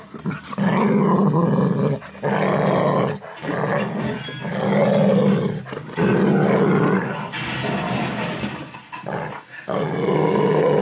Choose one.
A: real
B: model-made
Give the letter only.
A